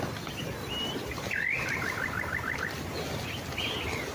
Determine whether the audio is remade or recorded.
recorded